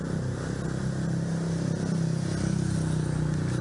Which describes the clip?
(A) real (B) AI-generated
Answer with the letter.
A